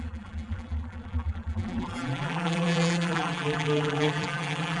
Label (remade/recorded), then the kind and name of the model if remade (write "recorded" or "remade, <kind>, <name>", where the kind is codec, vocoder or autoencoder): remade, vocoder, BigVGAN v2